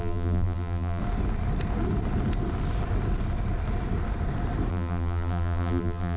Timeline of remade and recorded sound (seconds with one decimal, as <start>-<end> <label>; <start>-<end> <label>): 0.0-1.0 remade; 1.0-4.7 recorded; 4.7-6.2 remade